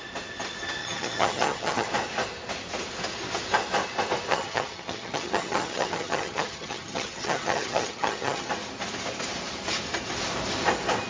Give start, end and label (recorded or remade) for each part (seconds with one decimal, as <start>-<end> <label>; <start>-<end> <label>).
0.0-0.8 recorded; 0.8-1.9 remade; 1.9-4.3 recorded; 4.3-8.5 remade; 8.5-11.1 recorded